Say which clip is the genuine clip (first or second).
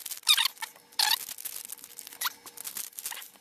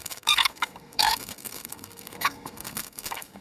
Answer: first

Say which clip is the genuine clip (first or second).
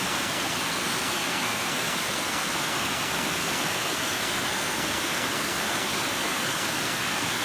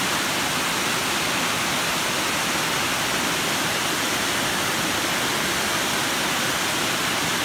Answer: second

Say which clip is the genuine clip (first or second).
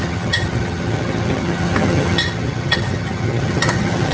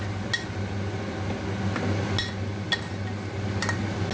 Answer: second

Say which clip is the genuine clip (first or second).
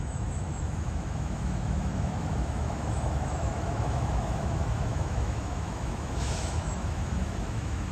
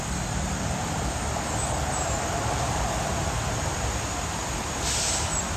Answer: second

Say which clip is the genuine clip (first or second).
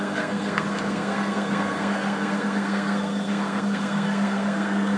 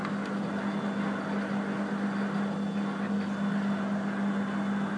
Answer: second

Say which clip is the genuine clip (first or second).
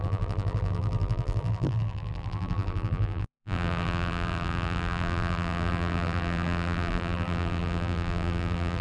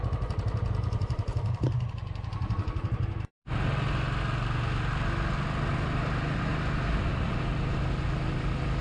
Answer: second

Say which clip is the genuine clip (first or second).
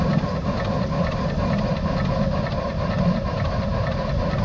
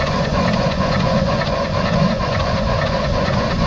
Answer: first